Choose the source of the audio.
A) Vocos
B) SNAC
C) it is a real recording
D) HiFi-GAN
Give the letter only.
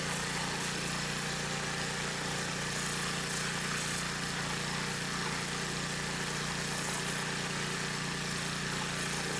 C